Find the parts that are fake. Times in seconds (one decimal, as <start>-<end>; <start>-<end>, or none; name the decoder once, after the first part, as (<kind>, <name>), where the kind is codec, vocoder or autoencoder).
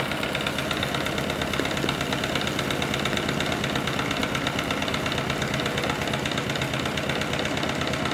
none